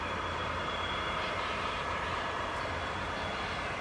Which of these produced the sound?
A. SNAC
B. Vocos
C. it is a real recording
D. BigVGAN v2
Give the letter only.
D